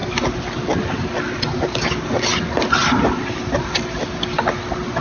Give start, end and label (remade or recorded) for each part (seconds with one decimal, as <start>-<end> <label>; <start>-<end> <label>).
0.0-5.0 recorded